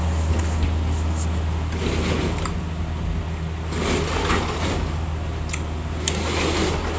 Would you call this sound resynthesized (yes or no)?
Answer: no